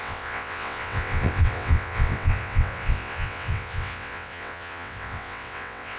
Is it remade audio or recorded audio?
remade